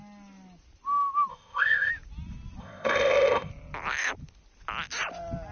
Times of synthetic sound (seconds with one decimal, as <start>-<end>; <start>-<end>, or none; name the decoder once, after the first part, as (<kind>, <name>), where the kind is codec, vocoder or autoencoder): 1.3-1.9 (codec, ZipCodec); 2.6-3.5